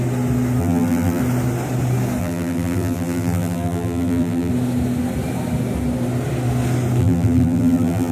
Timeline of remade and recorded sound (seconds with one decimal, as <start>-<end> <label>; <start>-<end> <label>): 0.0-0.6 recorded; 0.6-1.2 remade; 1.2-2.2 recorded; 2.2-4.5 remade; 4.5-7.0 recorded; 7.0-8.1 remade